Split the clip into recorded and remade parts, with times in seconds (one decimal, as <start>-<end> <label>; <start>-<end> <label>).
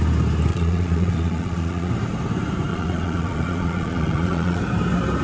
0.0-0.5 recorded; 0.5-1.9 remade; 1.9-2.7 recorded; 2.7-4.6 remade; 4.6-5.2 recorded